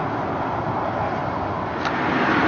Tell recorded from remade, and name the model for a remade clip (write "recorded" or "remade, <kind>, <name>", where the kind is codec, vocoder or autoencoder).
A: recorded